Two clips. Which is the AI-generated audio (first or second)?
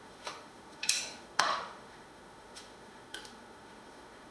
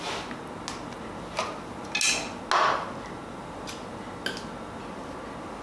first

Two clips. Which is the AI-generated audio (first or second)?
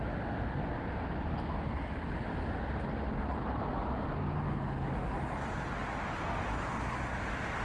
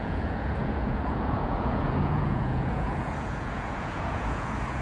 second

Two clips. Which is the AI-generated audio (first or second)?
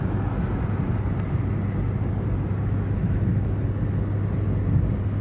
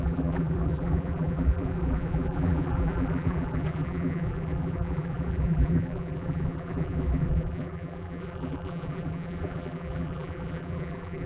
second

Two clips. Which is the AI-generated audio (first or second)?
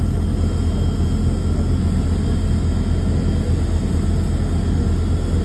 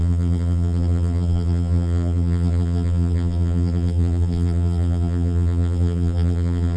second